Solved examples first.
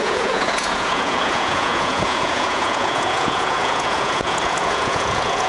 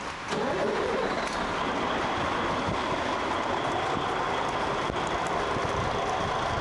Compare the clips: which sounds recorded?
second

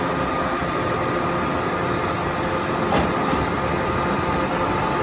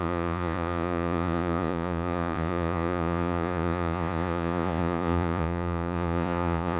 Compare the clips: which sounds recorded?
first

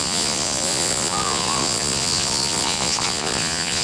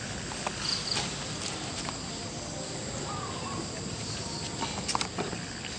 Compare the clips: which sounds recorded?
second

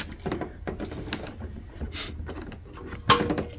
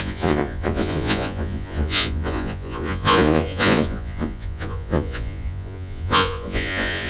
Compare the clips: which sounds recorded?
first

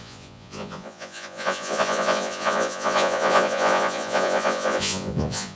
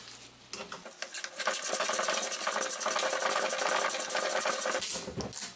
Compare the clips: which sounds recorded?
second